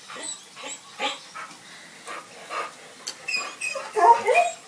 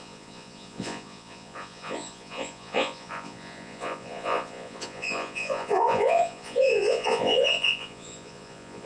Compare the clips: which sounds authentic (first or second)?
first